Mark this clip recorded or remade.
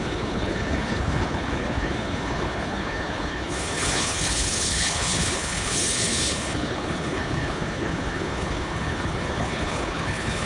remade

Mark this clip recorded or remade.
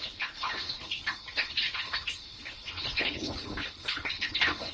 remade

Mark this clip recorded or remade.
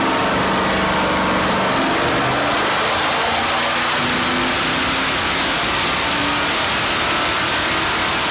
recorded